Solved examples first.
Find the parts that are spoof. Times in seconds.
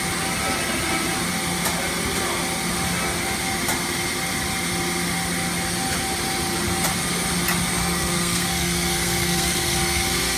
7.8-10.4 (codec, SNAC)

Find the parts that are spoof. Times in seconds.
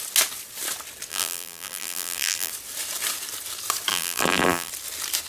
1.1-2.5 (vocoder, BigVGAN v2); 3.9-4.7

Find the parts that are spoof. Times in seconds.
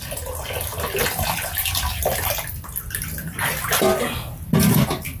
none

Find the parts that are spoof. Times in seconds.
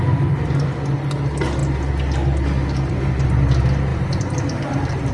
3.9-5.1 (vocoder, BigVGAN v2)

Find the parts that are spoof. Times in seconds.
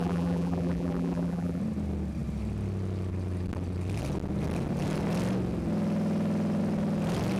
0.0-1.6 (vocoder, BigVGAN v2)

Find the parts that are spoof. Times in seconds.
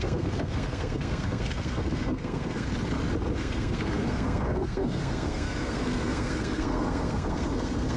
0.0-2.7 (codec, SNAC); 3.3-8.0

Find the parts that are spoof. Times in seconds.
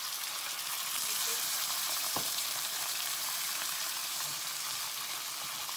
1.3-3.6 (vocoder, BigVGAN v2); 4.0-4.6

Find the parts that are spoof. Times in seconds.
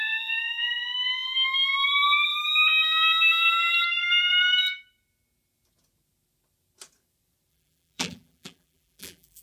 0.0-0.8 (vocoder, BigVGAN v2); 1.9-2.3; 7.5-9.4